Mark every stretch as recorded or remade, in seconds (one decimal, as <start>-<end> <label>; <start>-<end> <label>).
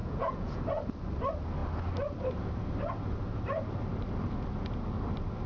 0.0-0.6 remade; 0.6-5.5 recorded